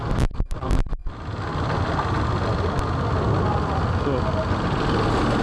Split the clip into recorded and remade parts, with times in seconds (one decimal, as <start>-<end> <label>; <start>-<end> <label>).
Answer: 0.0-5.4 recorded